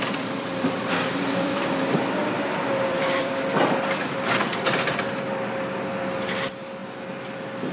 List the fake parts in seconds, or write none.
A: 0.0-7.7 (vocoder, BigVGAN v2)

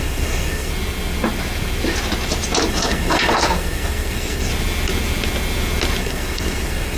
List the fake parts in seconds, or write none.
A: 0.0-0.7 (codec, SNAC); 2.7-4.5; 6.0-7.0

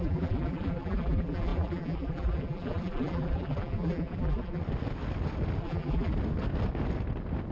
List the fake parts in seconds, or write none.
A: 0.0-4.6 (vocoder, BigVGAN v2); 5.6-6.1